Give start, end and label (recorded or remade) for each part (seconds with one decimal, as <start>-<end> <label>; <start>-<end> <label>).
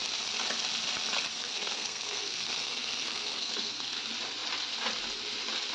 0.0-1.3 recorded; 1.3-4.0 remade; 4.0-5.7 recorded